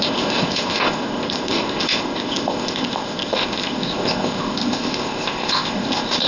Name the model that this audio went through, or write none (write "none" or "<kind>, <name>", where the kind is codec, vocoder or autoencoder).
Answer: codec, ZipCodec